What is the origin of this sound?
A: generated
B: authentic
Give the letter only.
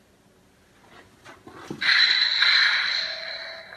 B